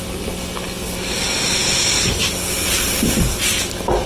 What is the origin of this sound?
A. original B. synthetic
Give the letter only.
A